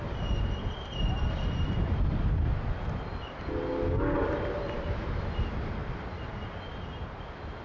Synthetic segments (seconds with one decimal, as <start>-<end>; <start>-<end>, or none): none